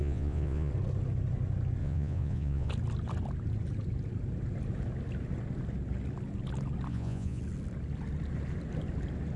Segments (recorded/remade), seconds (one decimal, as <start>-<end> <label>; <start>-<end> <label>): 0.0-0.7 remade; 0.7-1.8 recorded; 1.8-2.7 remade; 2.7-6.9 recorded; 6.9-7.4 remade; 7.4-9.4 recorded